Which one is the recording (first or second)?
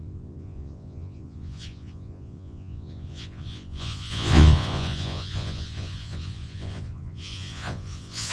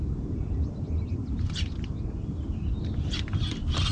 second